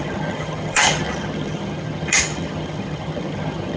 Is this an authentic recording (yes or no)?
no